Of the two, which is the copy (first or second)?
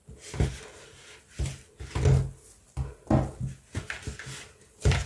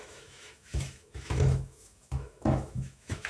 second